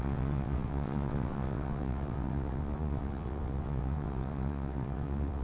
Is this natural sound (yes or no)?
no